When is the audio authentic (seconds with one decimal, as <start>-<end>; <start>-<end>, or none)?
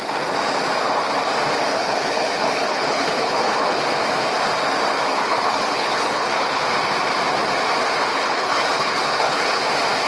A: 0.0-1.7; 3.8-5.1; 6.6-8.1; 9.6-10.1